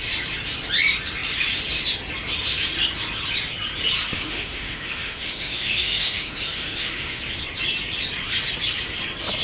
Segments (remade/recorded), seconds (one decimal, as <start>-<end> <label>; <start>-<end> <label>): 0.0-4.1 recorded; 4.1-7.2 remade; 7.2-9.4 recorded